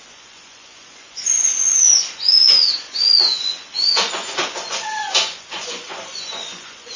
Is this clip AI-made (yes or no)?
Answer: yes